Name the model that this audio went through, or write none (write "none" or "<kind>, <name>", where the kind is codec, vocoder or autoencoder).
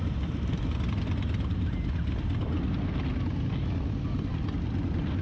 none